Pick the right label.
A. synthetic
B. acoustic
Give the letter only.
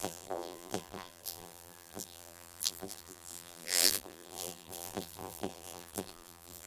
A